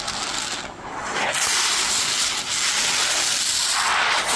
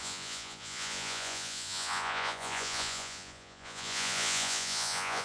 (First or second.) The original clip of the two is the first